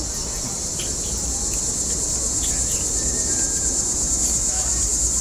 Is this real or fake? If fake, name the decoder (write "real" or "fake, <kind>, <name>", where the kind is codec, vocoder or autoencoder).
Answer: real